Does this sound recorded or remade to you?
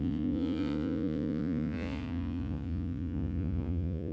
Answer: remade